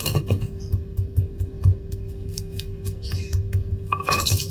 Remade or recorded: remade